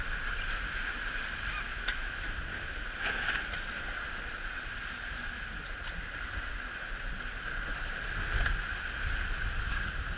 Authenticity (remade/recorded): recorded